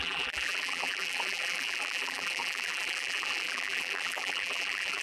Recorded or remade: remade